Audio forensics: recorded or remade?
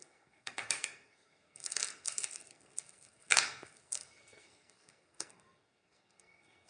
remade